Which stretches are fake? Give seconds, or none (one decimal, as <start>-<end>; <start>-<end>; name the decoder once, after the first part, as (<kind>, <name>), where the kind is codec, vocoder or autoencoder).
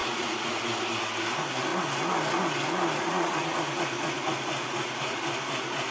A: 0.0-0.6 (vocoder, Vocos); 3.1-5.2